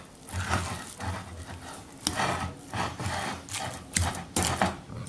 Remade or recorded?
recorded